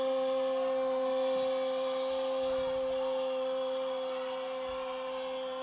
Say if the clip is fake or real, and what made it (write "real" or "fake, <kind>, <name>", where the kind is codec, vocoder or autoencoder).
real